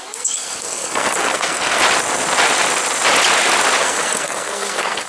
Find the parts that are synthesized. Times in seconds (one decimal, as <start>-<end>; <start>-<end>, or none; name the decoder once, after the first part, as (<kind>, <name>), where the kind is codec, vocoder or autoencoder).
0.0-1.8 (codec, SNAC); 3.8-5.1